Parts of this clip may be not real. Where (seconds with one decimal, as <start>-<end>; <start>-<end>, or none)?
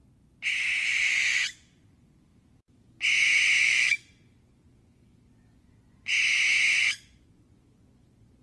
0.8-2.3; 3.6-6.1; 6.8-8.4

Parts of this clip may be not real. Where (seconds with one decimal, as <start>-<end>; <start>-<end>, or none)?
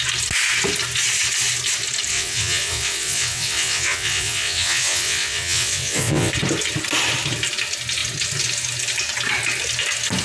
2.1-6.3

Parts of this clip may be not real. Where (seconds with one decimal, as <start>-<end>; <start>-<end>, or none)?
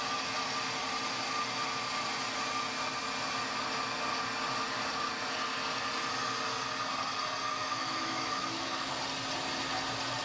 7.6-8.9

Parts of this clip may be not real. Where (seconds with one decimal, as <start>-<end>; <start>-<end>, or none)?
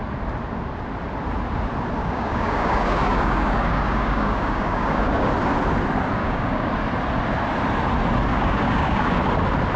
2.0-5.3; 6.2-6.7; 8.3-9.2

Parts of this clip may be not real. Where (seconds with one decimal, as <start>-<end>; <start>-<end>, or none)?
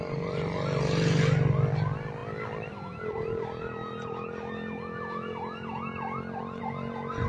none